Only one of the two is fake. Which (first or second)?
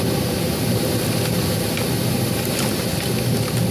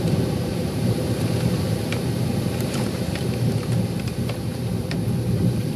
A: second